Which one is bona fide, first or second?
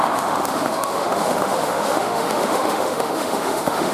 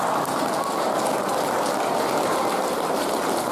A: second